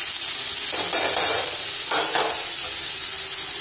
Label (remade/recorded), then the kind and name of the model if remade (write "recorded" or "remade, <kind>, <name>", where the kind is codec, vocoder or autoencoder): recorded